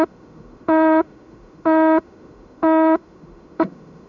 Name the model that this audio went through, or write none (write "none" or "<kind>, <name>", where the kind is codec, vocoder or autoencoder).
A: autoencoder, DAC-VAE